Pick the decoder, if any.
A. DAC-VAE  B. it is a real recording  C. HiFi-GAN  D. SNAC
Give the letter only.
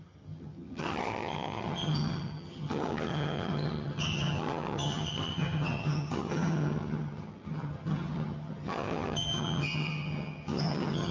C